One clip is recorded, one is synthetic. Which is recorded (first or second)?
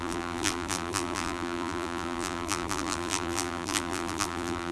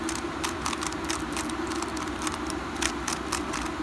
second